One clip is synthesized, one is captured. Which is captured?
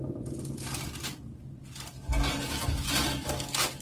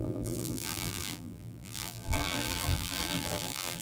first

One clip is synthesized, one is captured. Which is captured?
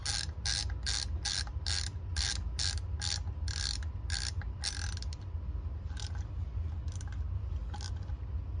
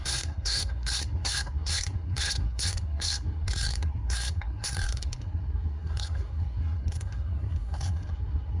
first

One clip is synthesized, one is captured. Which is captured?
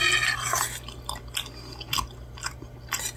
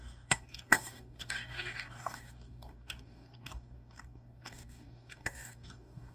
first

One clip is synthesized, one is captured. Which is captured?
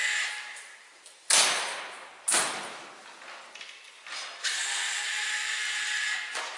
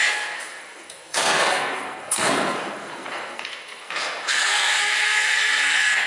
first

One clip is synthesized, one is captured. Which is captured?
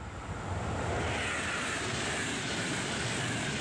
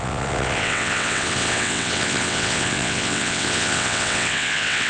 first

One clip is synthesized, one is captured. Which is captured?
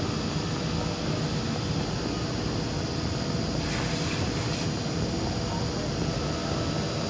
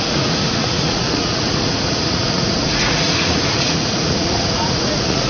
first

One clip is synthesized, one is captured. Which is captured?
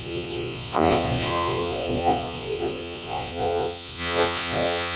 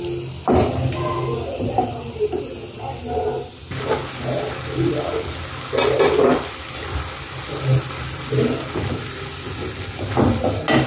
second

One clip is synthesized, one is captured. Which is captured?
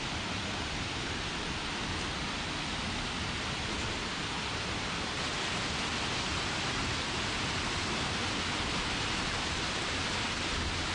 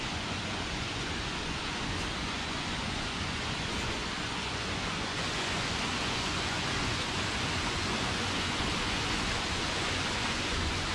first